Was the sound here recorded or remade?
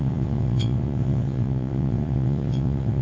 remade